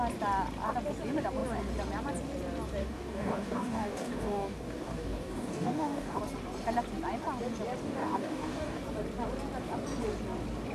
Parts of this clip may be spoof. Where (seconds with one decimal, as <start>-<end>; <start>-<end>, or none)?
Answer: 2.8-6.2; 7.8-8.8